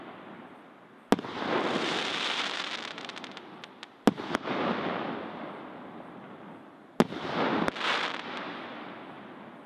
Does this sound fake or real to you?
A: real